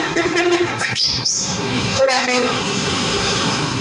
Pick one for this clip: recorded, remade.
remade